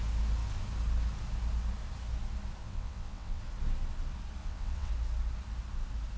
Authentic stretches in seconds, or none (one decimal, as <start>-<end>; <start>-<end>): 0.0-2.6; 3.4-4.4; 4.9-6.2